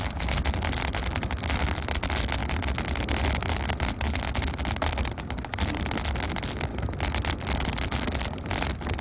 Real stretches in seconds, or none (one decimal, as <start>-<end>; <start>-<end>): 0.0-9.0